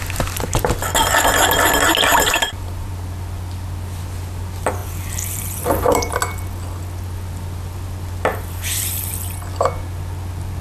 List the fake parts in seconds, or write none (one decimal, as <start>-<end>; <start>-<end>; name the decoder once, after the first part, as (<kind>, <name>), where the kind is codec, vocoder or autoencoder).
2.1-2.9 (vocoder, BigVGAN v2); 4.8-6.2; 8.3-9.1